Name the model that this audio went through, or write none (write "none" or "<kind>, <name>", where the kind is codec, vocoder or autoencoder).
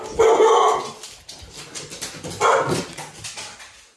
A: none